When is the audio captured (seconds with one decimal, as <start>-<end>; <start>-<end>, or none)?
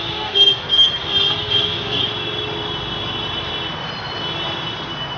2.0-5.2